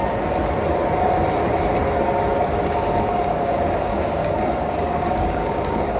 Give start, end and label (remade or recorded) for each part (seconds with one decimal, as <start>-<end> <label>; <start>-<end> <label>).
0.0-2.5 recorded; 2.5-6.0 remade